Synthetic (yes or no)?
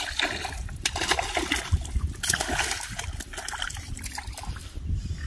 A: yes